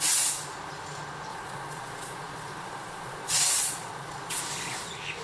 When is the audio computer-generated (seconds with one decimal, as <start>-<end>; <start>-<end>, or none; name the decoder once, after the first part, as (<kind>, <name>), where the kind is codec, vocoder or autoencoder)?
1.3-4.4 (vocoder, Vocos)